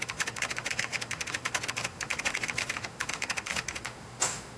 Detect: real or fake fake